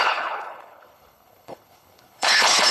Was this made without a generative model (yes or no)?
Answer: no